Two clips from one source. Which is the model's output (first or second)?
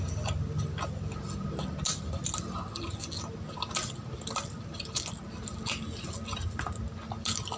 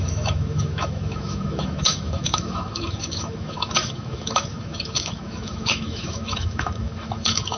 second